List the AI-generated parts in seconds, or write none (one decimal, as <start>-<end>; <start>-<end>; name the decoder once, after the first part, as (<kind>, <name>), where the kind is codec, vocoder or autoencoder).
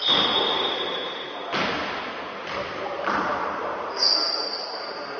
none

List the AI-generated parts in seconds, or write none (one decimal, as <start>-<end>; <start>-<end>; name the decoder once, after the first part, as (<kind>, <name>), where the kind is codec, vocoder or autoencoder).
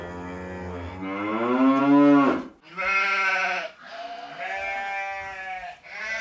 none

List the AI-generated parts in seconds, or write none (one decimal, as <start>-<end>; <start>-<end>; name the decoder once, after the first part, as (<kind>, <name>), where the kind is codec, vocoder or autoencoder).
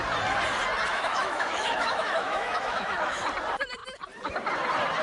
0.9-3.2 (autoencoder, DAC-VAE)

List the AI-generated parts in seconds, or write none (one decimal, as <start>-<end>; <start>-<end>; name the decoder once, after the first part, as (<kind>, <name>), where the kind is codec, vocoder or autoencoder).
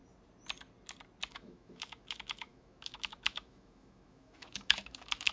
1.3-5.3 (autoencoder, DAC-VAE)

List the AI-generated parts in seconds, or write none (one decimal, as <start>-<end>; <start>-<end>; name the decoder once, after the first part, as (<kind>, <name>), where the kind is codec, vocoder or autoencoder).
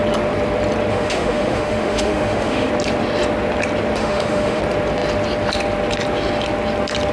0.9-2.7 (autoencoder, DAC-VAE); 4.0-4.6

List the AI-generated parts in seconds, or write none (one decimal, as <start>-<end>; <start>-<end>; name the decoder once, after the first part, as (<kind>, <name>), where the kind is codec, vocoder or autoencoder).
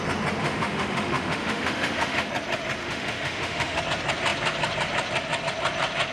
0.4-2.3 (autoencoder, DAC-VAE); 2.8-3.8